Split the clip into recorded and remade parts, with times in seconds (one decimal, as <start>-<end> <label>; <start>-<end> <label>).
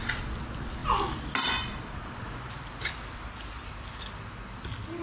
0.0-5.0 recorded